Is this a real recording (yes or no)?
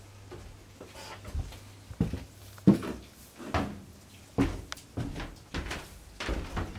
yes